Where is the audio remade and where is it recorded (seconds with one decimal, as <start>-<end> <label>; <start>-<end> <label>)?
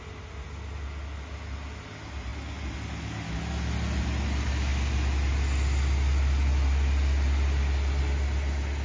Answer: 0.0-8.8 recorded